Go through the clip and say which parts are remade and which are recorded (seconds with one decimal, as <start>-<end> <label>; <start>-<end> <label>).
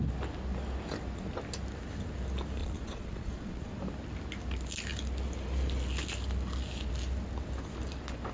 0.0-2.6 recorded; 2.6-3.7 remade; 3.7-8.3 recorded